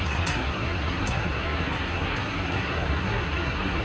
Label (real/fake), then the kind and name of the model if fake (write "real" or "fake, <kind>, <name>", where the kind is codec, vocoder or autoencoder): fake, codec, SNAC